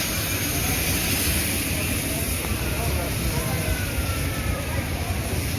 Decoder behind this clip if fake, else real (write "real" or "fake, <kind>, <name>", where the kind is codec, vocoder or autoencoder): fake, vocoder, BigVGAN v2